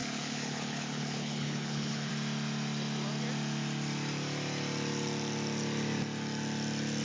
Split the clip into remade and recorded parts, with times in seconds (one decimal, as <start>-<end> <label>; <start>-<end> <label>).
0.0-2.1 remade; 2.1-7.0 recorded